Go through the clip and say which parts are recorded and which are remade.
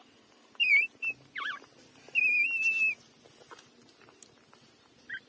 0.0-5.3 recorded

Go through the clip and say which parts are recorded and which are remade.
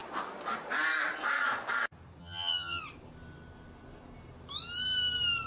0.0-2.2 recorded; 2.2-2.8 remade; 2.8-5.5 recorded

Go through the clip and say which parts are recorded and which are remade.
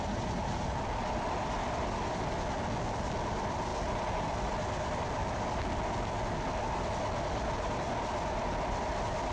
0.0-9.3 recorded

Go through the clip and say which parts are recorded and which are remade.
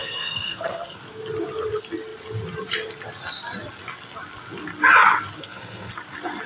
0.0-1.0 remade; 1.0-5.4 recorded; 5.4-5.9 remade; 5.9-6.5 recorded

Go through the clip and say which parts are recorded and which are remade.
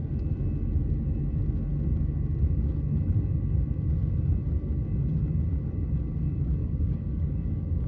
0.0-6.6 recorded; 6.6-7.9 remade